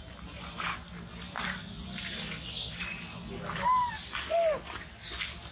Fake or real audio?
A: real